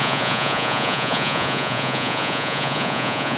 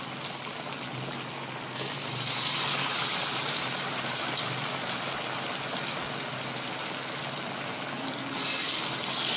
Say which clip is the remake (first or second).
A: first